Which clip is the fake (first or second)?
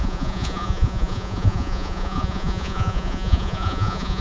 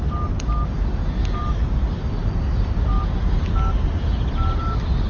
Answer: first